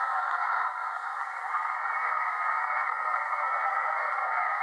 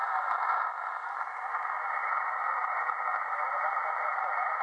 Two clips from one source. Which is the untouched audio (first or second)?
second